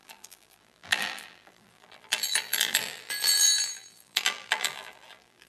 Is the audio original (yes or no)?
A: no